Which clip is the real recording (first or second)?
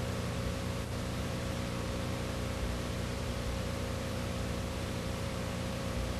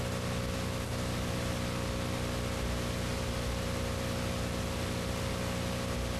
second